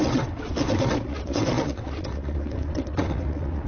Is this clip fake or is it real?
fake